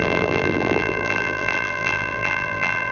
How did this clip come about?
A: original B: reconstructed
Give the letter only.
B